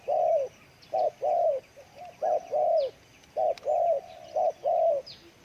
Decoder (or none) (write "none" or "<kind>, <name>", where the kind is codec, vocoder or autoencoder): none